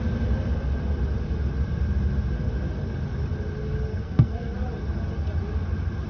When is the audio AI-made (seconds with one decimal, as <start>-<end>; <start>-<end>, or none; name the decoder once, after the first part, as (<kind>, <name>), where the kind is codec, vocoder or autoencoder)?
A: 3.9-4.5 (codec, SNAC)